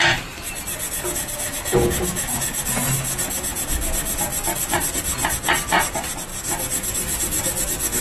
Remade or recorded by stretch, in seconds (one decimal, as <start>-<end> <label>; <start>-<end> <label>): 0.0-8.0 recorded